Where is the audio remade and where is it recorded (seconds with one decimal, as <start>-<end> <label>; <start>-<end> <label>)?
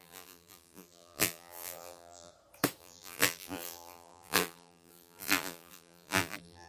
0.0-2.3 remade; 2.3-2.8 recorded; 2.8-6.7 remade